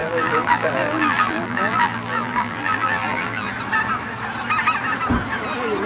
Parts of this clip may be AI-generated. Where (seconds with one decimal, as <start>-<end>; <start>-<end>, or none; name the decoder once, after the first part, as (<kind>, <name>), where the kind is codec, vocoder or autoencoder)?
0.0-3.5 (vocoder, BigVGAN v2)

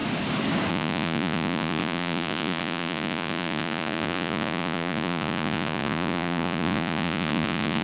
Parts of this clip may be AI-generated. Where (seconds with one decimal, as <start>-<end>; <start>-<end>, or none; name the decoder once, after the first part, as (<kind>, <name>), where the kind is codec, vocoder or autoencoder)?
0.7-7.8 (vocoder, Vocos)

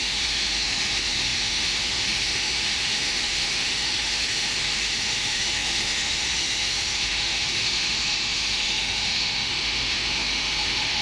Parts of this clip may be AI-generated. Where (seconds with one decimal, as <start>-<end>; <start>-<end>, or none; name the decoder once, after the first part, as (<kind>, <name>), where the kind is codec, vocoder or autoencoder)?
0.0-11.0 (autoencoder, DAC-VAE)

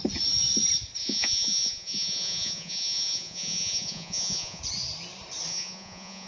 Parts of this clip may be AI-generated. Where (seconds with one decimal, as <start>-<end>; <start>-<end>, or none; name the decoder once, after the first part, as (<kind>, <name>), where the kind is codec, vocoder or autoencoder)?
1.0-4.6 (vocoder, Vocos); 5.5-6.3

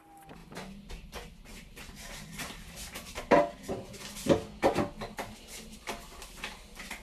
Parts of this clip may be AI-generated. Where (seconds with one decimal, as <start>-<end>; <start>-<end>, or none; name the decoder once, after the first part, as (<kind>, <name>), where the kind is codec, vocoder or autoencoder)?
1.5-3.2 (vocoder, BigVGAN v2)